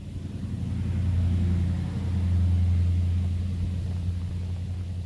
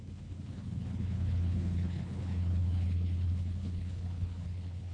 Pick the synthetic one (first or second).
second